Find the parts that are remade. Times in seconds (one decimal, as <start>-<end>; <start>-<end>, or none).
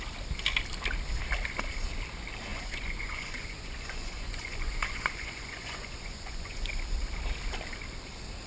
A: 2.5-6.7